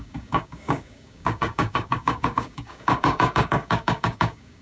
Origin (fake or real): fake